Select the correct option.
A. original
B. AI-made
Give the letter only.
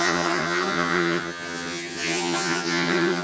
B